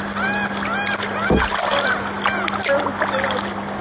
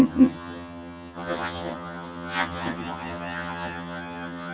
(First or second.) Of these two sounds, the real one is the first